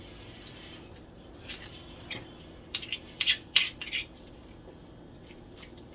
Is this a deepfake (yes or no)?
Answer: yes